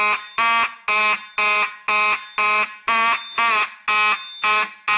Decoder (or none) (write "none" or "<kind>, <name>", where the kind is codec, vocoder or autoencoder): none